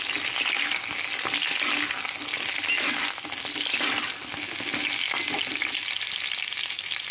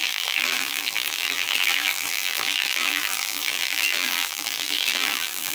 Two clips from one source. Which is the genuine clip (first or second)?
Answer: first